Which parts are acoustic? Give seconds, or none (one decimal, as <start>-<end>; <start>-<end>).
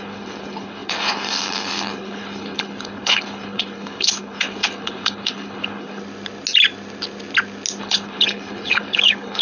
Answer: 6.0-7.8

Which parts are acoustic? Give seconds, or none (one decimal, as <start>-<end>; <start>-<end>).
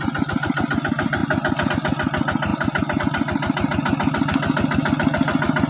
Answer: 0.0-5.7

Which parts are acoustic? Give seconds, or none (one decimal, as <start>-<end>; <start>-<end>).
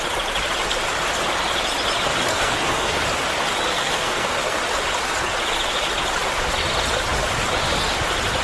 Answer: 0.0-2.3; 3.0-3.7; 4.6-8.4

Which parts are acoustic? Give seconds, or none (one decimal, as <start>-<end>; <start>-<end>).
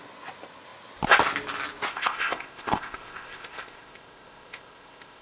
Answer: 0.0-1.9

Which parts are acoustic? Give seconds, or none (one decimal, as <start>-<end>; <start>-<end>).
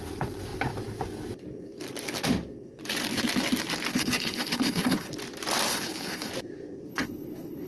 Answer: 0.0-3.9; 5.1-5.7; 6.3-6.9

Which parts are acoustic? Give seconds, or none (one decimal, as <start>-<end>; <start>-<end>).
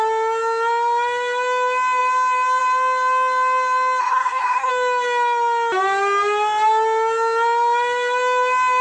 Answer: 0.0-4.0; 4.7-8.8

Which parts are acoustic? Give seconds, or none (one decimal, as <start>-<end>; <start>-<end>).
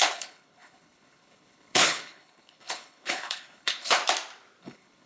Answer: 4.0-4.6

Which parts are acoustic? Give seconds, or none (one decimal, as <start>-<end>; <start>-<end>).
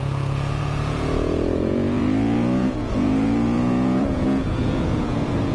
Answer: none